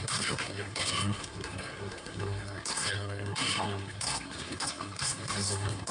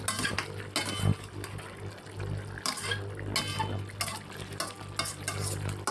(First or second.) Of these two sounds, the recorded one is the second